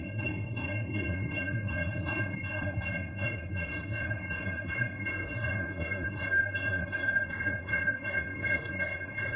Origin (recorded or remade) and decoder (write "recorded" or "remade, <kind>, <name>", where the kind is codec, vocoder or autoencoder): remade, codec, SNAC